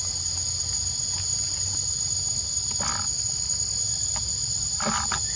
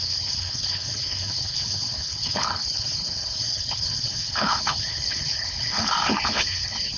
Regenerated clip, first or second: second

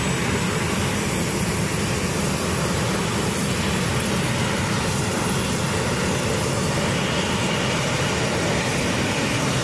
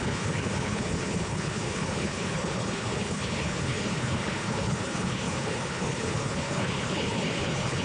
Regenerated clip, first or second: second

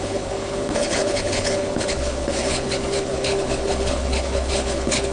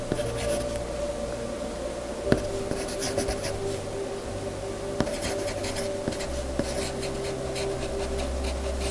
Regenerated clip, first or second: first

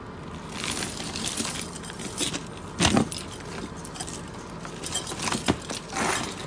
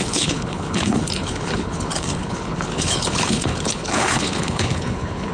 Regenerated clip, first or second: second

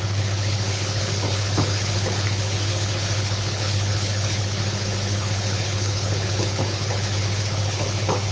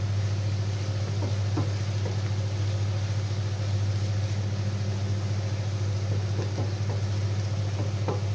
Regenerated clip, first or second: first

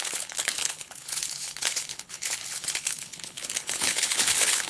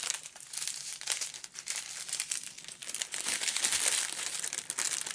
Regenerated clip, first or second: first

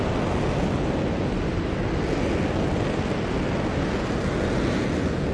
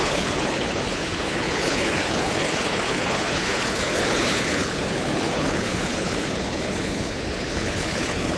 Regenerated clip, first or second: second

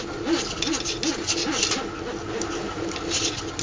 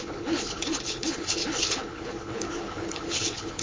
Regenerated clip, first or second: second